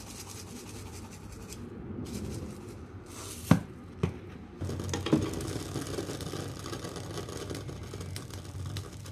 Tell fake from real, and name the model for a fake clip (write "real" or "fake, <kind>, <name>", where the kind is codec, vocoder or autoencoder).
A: real